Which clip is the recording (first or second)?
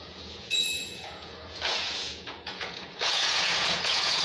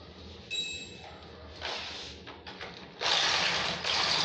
second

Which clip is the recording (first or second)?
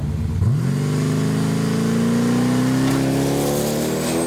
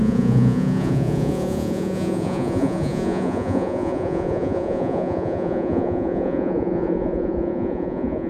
first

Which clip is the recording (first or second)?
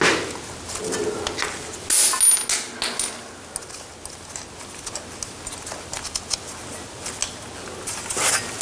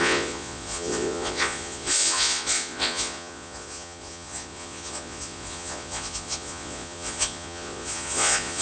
first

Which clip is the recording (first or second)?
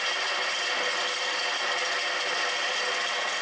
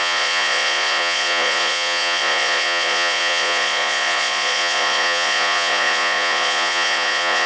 first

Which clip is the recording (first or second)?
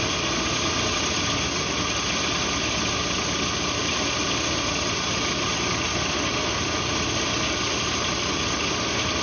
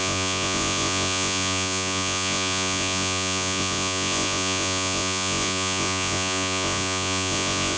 first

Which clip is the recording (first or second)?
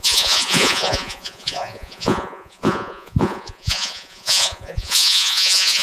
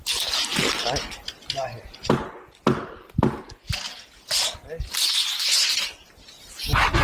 second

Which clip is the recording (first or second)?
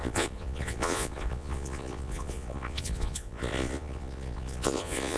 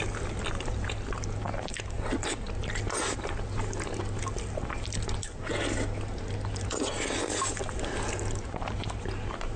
second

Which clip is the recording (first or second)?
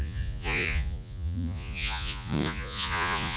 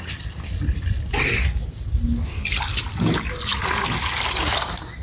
second